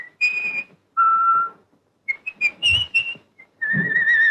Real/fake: real